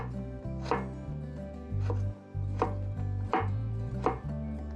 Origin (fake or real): real